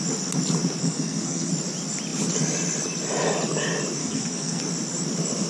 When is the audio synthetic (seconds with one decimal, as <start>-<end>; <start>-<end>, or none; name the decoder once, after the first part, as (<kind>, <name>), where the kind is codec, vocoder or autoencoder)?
0.8-1.5 (codec, SNAC); 4.0-4.6